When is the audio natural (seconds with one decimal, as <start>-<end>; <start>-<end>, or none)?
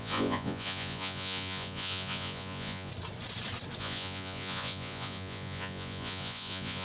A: 2.9-3.8